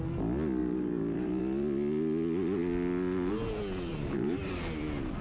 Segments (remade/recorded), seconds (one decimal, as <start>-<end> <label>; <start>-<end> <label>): 0.0-0.6 recorded; 0.6-1.4 remade; 1.4-3.9 recorded; 3.9-4.5 remade; 4.5-5.2 recorded

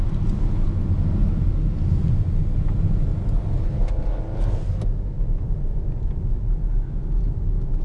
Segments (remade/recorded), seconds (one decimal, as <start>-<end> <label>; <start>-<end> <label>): 0.0-7.8 recorded

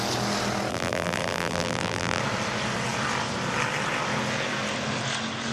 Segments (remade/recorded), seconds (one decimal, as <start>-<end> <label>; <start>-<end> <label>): 0.0-0.7 recorded; 0.7-2.2 remade; 2.2-5.5 recorded

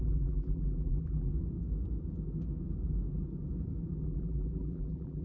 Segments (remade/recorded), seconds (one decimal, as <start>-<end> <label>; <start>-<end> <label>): 0.0-1.3 remade; 1.3-4.0 recorded; 4.0-5.2 remade